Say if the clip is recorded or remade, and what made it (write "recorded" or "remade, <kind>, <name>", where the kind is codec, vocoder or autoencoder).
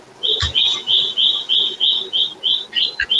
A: recorded